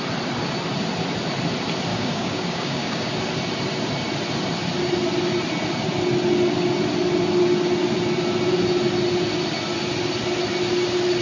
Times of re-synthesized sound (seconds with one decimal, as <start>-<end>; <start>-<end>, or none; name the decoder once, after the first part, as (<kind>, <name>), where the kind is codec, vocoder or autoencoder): 1.9-3.1 (codec, DAC)